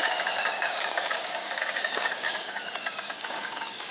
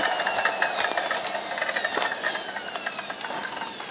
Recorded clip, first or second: second